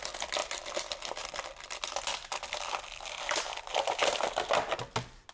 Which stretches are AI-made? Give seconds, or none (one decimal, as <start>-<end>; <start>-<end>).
0.4-3.6